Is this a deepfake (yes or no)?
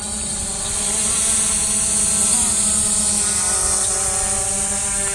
no